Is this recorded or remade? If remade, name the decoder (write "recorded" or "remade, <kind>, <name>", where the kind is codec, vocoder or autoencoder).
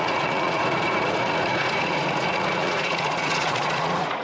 remade, vocoder, Vocos